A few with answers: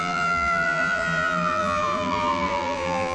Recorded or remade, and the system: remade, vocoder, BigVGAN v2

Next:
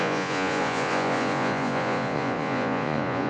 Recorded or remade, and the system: remade, vocoder, Vocos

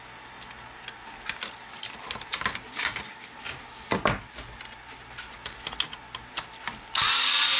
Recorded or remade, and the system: recorded